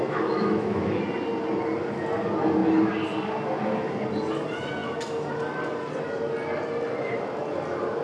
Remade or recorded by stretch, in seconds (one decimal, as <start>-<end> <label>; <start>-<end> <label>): 0.0-1.0 remade; 1.0-8.0 recorded